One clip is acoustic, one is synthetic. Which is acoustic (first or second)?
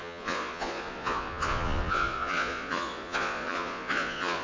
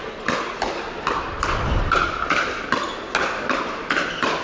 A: second